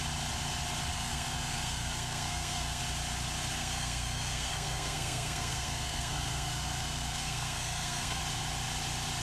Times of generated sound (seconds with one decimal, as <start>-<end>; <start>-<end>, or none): 0.9-2.8; 3.6-8.2